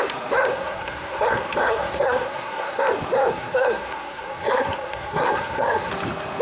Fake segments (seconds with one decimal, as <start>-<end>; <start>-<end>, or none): 0.5-2.8; 3.3-5.9